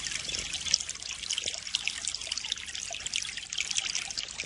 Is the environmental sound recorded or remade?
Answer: recorded